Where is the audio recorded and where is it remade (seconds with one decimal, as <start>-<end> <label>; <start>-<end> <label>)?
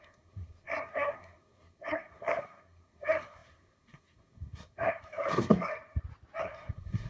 0.0-5.7 remade; 5.7-6.4 recorded; 6.4-7.1 remade